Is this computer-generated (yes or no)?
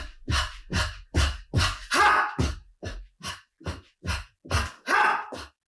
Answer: no